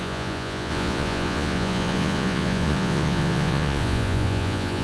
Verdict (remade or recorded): remade